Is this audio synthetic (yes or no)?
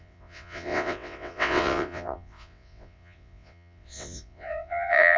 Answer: yes